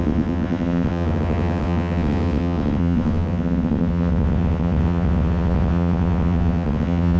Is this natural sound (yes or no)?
no